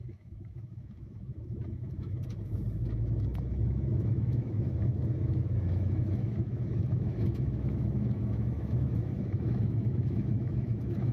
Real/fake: fake